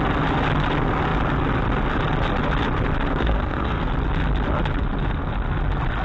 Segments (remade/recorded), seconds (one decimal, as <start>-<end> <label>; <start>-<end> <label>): 0.0-3.2 recorded; 3.2-3.9 remade; 3.9-6.0 recorded